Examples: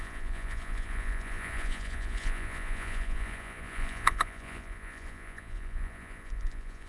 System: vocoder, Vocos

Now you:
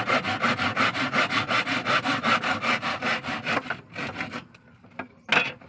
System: none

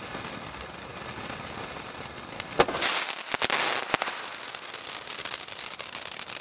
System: none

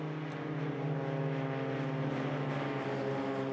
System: none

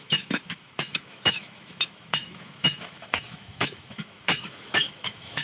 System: autoencoder, DAC-VAE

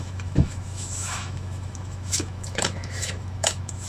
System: autoencoder, DAC-VAE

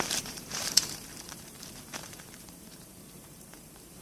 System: vocoder, BigVGAN v2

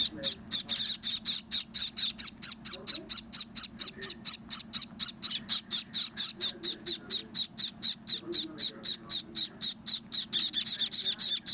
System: none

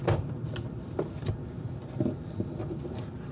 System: none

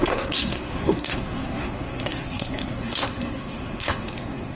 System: codec, SNAC